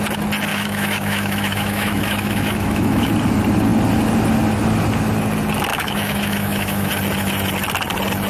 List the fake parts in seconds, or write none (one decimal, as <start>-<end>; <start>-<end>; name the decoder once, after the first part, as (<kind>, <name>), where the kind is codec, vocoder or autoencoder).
0.5-3.1 (autoencoder, DAC-VAE); 5.7-6.9